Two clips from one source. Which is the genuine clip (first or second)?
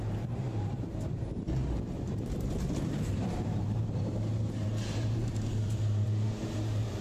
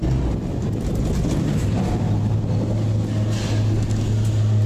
second